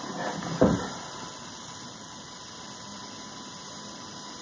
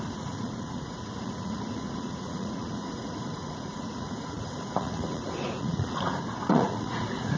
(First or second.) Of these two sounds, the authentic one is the first